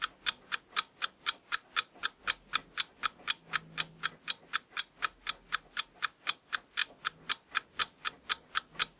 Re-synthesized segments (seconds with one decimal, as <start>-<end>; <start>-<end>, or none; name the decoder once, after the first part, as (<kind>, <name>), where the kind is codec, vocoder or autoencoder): none